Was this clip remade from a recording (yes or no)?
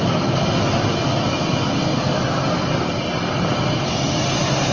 no